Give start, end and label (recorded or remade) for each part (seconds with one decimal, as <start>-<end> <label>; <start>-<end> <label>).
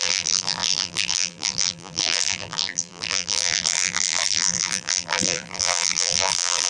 0.0-6.7 remade